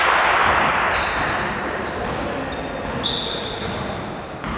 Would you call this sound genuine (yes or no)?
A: yes